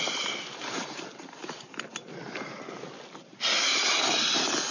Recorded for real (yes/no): yes